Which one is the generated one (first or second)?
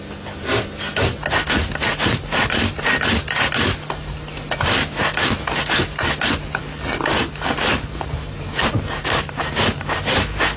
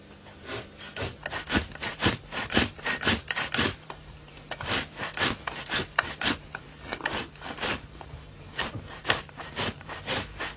second